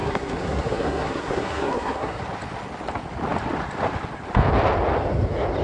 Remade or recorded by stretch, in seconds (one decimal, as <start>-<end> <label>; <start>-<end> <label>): 0.0-2.2 remade; 2.2-5.6 recorded